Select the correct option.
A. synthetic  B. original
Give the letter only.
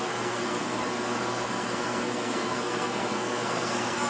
A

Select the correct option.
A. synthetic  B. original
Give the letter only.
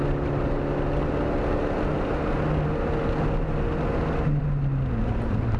B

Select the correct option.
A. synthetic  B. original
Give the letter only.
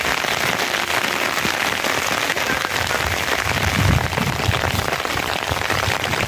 B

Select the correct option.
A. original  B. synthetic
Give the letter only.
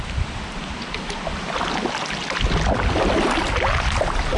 A